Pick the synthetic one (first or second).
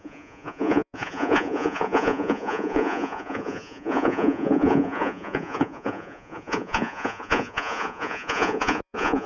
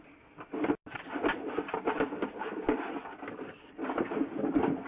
first